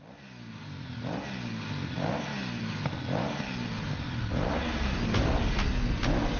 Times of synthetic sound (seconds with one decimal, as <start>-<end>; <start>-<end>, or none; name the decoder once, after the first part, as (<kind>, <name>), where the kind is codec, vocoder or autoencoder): none